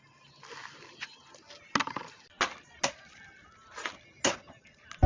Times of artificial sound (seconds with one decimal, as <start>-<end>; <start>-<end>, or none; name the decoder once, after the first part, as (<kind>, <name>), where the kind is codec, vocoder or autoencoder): none

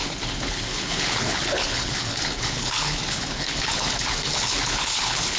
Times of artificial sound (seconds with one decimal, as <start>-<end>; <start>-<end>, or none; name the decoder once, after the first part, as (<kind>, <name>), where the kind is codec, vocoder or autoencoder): 0.0-5.4 (codec, HILCodec)